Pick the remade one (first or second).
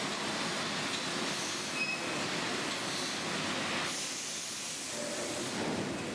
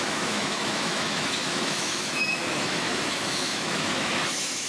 second